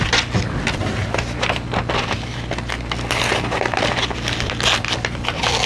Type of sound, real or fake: real